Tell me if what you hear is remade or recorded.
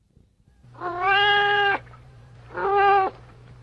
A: remade